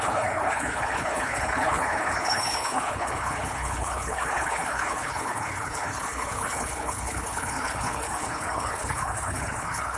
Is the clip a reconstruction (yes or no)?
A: yes